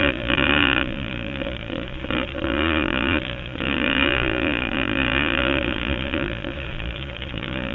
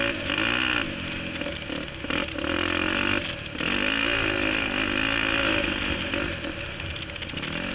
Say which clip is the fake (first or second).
first